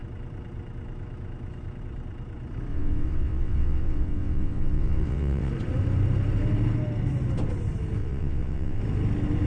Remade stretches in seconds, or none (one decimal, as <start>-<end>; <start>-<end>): 2.7-5.5; 8.0-8.8